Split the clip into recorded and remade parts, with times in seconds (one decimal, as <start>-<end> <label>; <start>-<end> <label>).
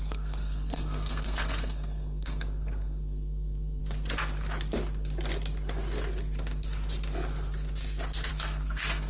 0.0-3.8 remade; 3.8-8.3 recorded; 8.3-9.1 remade